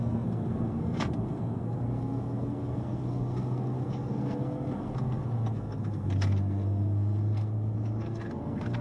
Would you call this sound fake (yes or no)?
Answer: yes